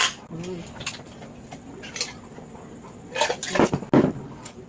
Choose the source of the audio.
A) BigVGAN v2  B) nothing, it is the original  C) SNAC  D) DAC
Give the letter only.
B